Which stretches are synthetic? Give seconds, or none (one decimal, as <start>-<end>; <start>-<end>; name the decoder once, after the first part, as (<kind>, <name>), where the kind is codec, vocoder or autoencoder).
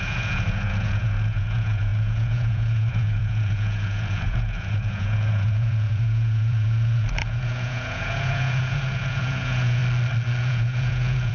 0.0-9.8 (vocoder, Vocos); 10.4-11.3